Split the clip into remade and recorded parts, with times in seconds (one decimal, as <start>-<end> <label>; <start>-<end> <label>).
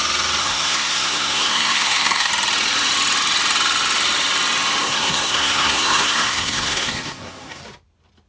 0.0-0.4 recorded; 0.4-2.3 remade; 2.3-4.8 recorded; 4.8-7.6 remade; 7.6-8.3 recorded